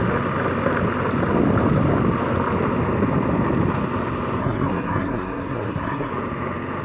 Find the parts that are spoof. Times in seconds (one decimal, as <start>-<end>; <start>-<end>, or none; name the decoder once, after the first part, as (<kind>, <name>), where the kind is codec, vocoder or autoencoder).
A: 4.4-6.1 (codec, SNAC)